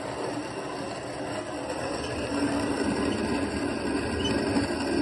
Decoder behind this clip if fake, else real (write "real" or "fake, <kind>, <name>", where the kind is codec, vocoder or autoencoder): real